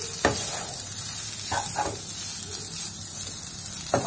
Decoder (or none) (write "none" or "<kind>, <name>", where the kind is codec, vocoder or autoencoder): none